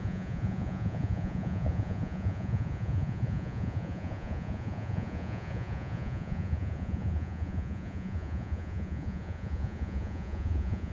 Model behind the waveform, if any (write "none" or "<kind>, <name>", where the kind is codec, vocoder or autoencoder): vocoder, Vocos